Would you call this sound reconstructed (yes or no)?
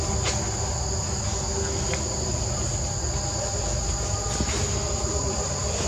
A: no